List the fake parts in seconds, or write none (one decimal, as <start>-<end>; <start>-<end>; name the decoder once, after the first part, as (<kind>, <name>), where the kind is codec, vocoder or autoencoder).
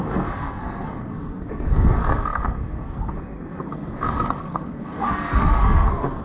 0.0-6.2 (codec, SNAC)